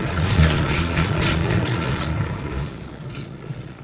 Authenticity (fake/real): fake